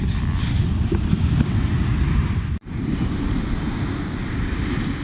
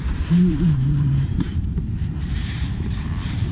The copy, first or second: second